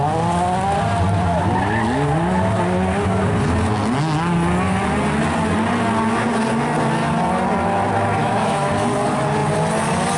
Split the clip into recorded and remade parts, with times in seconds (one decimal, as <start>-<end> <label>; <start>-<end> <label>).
0.0-8.2 recorded; 8.2-8.7 remade; 8.7-10.2 recorded